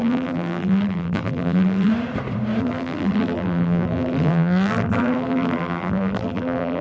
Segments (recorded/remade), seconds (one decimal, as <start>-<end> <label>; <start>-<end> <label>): 0.0-1.9 remade; 1.9-2.6 recorded; 2.6-6.8 remade

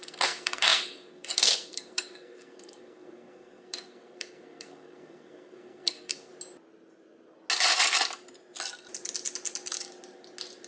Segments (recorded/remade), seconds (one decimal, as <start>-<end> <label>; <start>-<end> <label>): 0.0-6.3 remade; 6.3-10.7 recorded

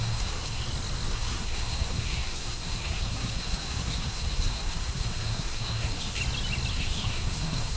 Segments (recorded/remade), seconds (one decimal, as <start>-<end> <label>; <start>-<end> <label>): 0.0-0.6 remade; 0.6-1.1 recorded; 1.1-6.2 remade; 6.2-6.7 recorded; 6.7-7.8 remade

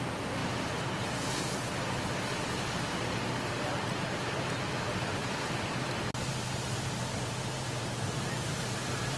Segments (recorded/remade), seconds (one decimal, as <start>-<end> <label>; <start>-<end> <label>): 0.0-5.2 recorded; 5.2-9.2 remade

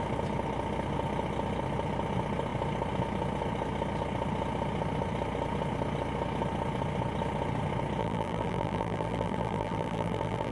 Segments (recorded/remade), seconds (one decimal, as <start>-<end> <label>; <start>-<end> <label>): 0.0-8.0 recorded; 8.0-10.5 remade

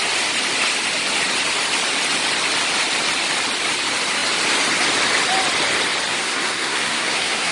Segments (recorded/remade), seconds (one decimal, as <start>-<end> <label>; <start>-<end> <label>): 0.0-6.1 recorded; 6.1-7.5 remade

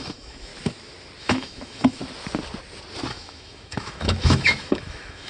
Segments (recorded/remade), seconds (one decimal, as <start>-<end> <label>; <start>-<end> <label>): 0.0-0.5 remade; 0.5-1.2 recorded; 1.2-2.0 remade; 2.0-3.1 recorded; 3.1-5.3 remade

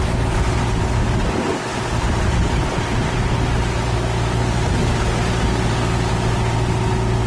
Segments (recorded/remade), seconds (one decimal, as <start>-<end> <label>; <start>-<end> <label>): 0.0-7.3 recorded